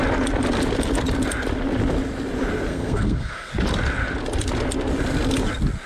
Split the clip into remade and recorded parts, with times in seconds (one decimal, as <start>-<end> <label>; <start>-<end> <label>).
0.0-2.7 recorded; 2.7-3.5 remade; 3.5-5.9 recorded